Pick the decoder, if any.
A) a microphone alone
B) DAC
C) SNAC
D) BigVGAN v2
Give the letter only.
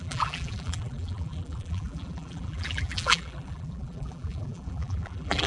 D